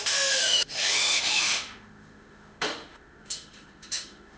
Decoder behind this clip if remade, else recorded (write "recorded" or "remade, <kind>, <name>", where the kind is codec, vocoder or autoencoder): remade, autoencoder, DAC-VAE